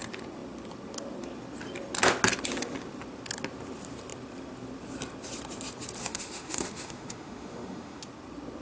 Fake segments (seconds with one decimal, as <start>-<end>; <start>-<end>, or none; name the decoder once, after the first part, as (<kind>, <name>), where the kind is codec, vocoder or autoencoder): 6.0-8.0 (autoencoder, DAC-VAE)